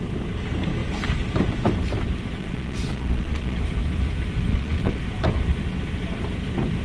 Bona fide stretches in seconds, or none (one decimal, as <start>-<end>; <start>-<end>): 0.0-2.4; 3.6-4.5; 5.0-6.8